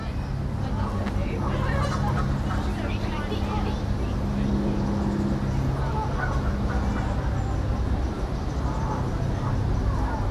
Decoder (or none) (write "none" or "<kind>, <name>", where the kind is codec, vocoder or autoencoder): none